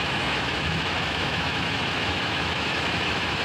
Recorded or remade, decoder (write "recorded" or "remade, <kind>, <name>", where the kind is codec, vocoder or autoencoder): remade, autoencoder, DAC-VAE